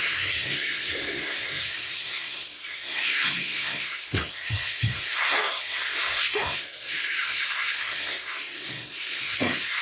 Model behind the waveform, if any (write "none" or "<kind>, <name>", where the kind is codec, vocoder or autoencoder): codec, SNAC